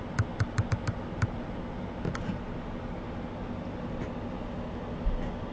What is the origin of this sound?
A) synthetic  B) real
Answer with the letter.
B